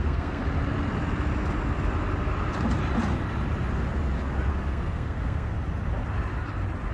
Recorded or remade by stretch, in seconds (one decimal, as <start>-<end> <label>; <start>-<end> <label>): 0.0-0.4 remade; 0.4-4.5 recorded; 4.5-5.5 remade; 5.5-6.9 recorded